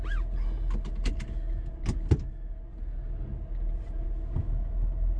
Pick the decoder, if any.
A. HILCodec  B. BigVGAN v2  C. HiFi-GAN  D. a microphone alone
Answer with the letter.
D